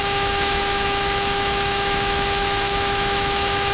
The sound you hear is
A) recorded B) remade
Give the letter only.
B